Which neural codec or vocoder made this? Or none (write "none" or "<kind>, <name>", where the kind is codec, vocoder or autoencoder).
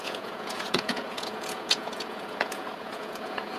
vocoder, Vocos